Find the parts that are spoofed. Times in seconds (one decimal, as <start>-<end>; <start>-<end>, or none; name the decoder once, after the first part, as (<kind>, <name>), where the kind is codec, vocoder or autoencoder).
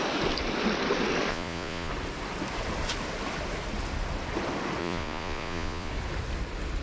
1.3-1.9 (vocoder, Vocos); 4.8-5.9